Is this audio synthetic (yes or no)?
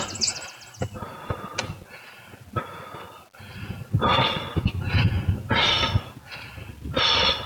no